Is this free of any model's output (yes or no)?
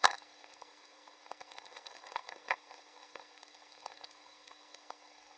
no